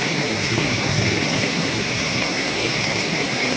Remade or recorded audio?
remade